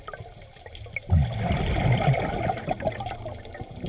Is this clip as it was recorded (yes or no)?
yes